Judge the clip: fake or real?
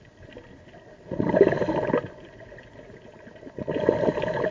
real